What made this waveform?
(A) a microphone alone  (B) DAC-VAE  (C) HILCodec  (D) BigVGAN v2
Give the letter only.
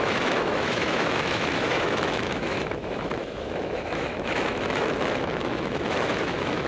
B